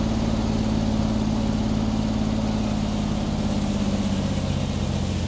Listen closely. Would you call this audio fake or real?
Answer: real